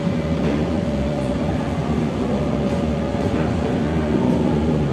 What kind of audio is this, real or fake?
fake